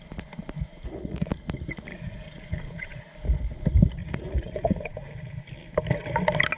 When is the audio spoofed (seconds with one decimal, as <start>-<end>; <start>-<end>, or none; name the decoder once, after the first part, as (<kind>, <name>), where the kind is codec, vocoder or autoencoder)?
0.7-1.3 (vocoder, Vocos); 1.9-3.0; 4.0-5.1